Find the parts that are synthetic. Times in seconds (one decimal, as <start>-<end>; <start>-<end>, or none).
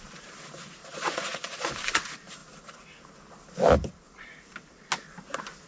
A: 0.8-1.7